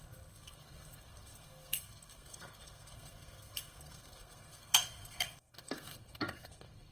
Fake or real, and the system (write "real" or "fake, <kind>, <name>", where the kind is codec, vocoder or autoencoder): fake, codec, SNAC